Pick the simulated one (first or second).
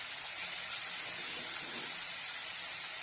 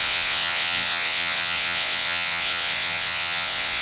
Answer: second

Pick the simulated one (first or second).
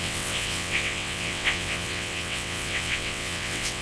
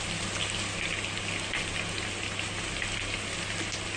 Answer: first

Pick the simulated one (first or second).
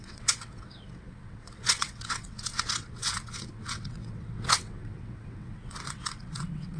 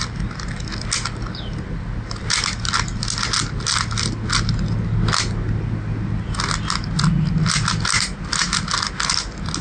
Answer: first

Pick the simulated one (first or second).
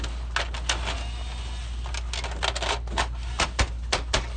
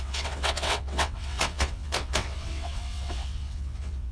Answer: second